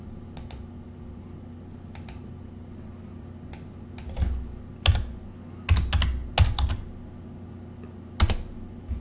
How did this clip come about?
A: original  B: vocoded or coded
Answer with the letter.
A